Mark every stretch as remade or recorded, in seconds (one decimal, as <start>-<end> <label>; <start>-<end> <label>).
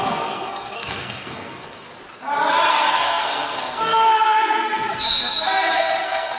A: 0.0-1.9 remade; 1.9-2.7 recorded; 2.7-6.4 remade